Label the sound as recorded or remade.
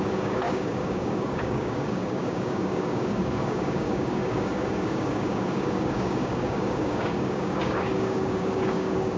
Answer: remade